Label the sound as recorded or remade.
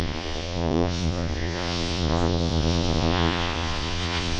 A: remade